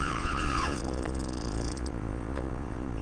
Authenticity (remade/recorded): remade